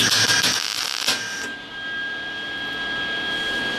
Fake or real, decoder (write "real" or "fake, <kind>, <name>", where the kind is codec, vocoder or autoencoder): real